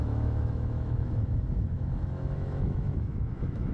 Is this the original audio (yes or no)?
no